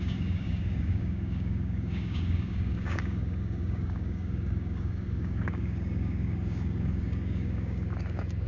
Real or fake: fake